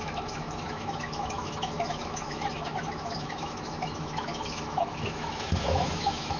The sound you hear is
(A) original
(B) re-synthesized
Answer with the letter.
B